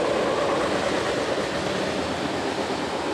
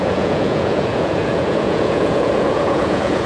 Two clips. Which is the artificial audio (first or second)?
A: second